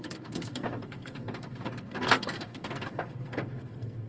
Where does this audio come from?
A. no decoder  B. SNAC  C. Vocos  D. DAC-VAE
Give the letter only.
B